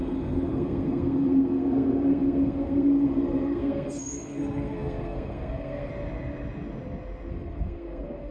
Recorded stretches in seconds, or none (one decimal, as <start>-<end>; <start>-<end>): 5.9-7.3